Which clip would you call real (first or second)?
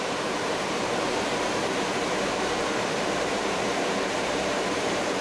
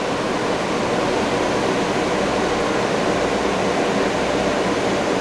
second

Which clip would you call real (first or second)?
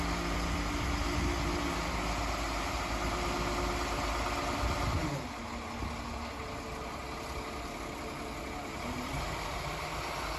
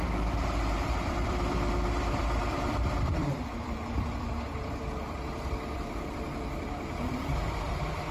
first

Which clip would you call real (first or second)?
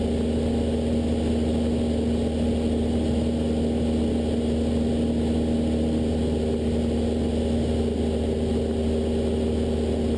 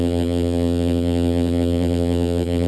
first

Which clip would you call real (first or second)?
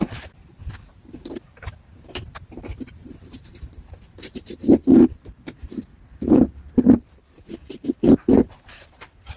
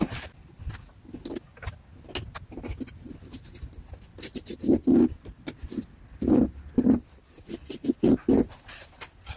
second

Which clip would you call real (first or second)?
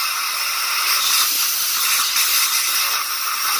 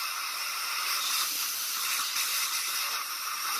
first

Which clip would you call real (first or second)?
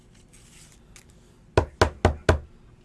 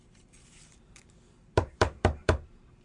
first